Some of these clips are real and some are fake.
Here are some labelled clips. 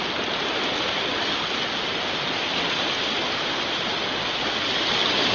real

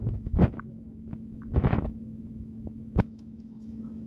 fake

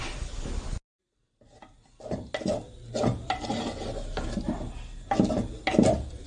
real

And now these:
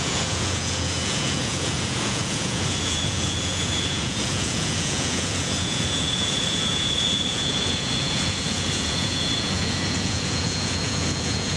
fake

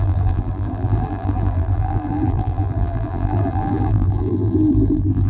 fake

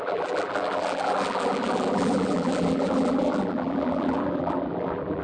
fake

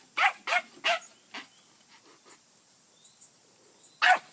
real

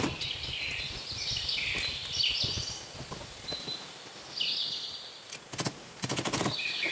real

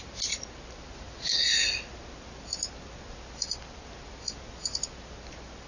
real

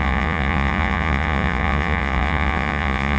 fake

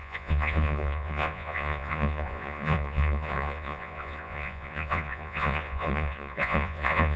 fake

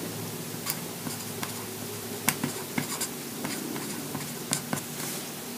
real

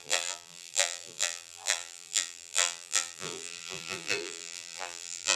fake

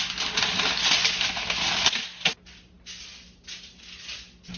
real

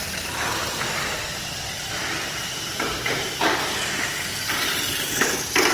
real